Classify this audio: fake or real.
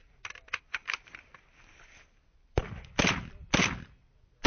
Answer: real